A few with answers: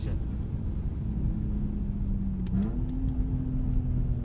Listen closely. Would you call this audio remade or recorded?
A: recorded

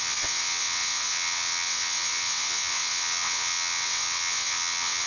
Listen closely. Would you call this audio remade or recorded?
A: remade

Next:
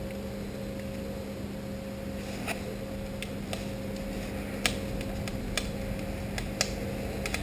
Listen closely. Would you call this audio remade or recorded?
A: recorded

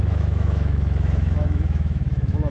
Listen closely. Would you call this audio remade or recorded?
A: remade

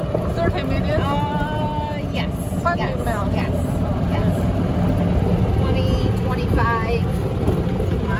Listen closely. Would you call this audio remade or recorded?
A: recorded